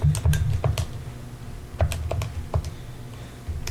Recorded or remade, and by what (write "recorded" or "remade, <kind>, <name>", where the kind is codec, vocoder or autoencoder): recorded